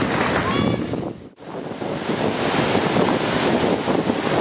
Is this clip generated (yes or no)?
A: no